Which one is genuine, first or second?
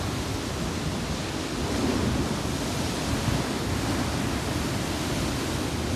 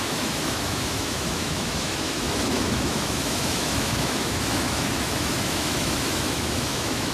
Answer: first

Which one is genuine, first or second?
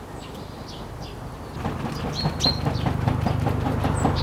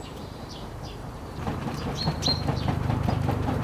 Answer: first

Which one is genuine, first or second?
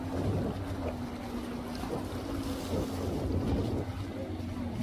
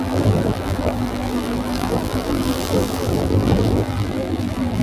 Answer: first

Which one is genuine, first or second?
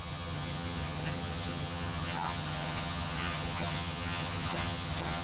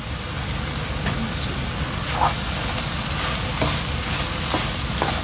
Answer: second